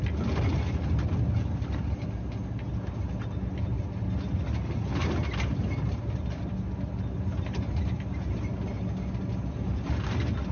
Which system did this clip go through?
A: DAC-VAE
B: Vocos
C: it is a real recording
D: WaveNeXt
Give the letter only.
C